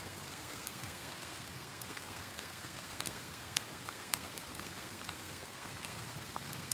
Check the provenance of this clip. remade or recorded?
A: remade